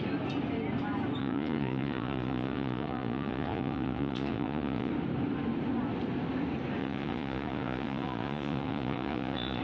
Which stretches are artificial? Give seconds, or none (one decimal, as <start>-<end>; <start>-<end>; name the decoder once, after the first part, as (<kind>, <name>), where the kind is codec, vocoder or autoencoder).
1.2-4.9 (vocoder, Vocos); 6.8-9.6